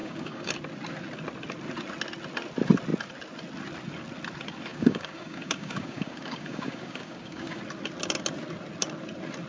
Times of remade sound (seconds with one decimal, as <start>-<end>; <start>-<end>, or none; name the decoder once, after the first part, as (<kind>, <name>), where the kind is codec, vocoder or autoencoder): 0.0-0.5 (codec, DAC); 4.7-7.6